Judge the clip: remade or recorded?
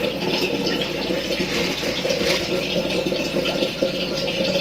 recorded